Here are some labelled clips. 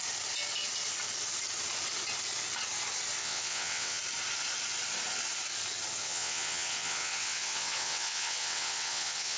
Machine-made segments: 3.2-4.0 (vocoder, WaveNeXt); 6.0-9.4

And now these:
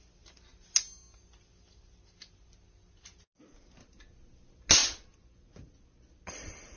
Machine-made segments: none

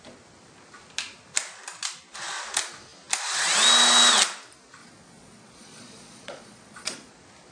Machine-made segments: 4.8-7.1 (vocoder, Vocos)

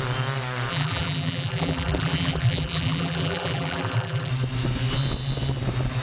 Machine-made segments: 0.7-4.3 (vocoder, BigVGAN v2)